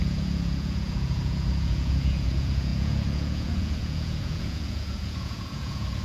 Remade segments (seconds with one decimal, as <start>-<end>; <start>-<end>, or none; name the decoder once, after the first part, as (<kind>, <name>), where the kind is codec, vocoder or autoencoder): 0.0-6.0 (vocoder, Vocos)